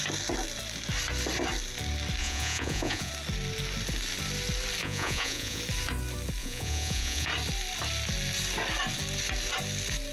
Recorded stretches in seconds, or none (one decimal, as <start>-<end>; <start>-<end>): 0.0-2.2; 3.1-4.8; 5.6-6.4; 7.3-10.1